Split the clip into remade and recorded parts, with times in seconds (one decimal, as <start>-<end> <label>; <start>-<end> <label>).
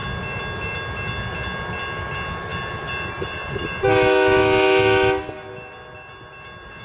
0.0-6.8 recorded